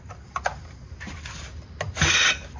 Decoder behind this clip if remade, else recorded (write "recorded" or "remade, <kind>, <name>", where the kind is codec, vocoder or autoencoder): recorded